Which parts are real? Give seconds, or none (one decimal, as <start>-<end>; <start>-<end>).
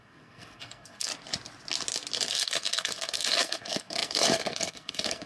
1.1-2.3